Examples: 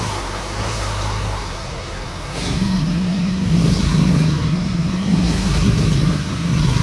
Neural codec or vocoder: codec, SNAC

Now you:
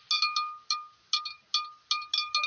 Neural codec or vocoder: none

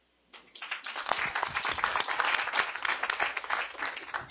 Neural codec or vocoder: none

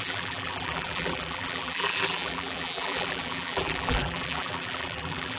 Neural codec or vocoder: vocoder, BigVGAN v2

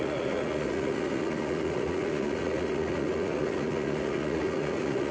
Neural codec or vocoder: vocoder, Vocos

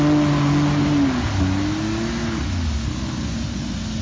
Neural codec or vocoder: none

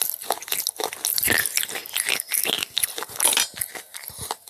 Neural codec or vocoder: none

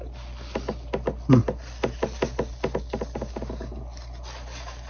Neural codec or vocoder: none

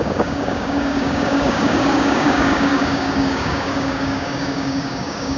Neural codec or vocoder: codec, DAC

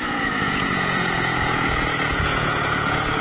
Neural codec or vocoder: vocoder, Vocos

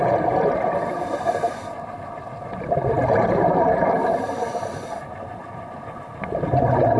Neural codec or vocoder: none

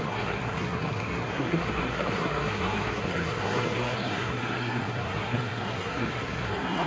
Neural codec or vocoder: codec, SNAC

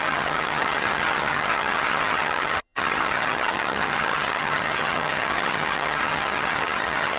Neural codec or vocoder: vocoder, HiFi-GAN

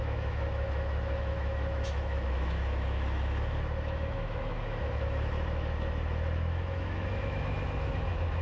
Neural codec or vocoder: autoencoder, DAC-VAE